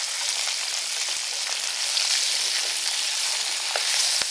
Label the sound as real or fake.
real